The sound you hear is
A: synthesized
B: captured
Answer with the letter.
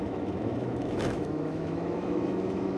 A